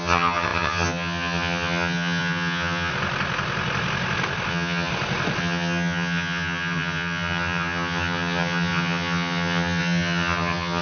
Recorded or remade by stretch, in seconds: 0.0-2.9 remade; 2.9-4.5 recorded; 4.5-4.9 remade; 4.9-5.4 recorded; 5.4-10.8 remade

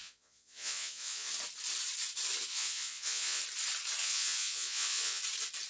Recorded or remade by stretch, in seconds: 0.0-1.3 remade; 1.3-2.5 recorded; 2.5-3.4 remade; 3.4-4.0 recorded; 4.0-5.2 remade; 5.2-5.7 recorded